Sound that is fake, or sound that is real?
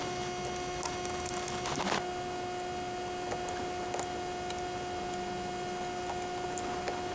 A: real